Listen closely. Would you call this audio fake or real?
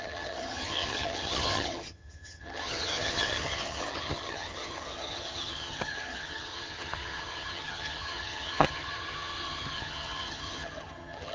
fake